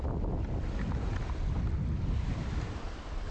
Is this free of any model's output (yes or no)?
yes